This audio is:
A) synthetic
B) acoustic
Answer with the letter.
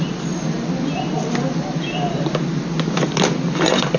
B